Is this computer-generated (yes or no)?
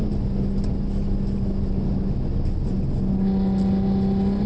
no